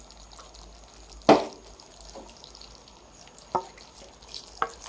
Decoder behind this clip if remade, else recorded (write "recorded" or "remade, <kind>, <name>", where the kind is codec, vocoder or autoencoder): recorded